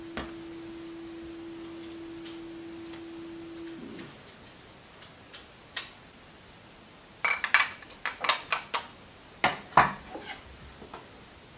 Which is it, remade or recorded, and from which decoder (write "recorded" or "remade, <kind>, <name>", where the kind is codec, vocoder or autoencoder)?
recorded